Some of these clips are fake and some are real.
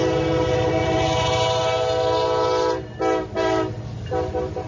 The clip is real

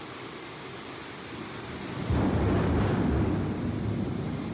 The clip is real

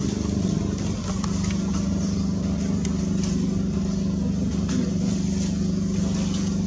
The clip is real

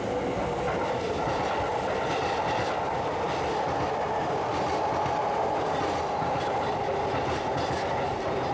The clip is real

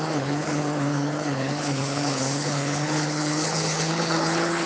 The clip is fake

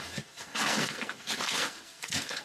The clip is fake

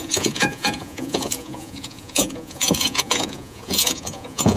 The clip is fake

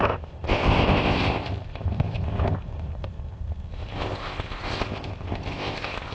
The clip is fake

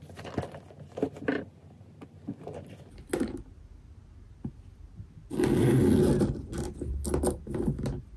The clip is real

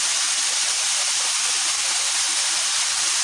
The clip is real